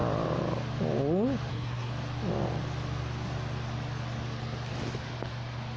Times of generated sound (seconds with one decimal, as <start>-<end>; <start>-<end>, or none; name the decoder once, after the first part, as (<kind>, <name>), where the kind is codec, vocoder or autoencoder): 1.5-1.9 (codec, SNAC)